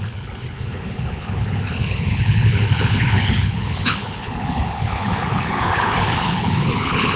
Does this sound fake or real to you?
fake